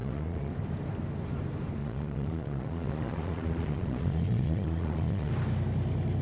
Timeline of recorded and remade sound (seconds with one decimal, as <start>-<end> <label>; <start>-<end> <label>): 0.0-0.5 remade; 0.5-1.8 recorded; 1.8-5.3 remade; 5.3-6.2 recorded